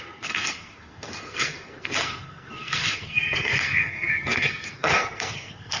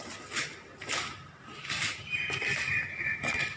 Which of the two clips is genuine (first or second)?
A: second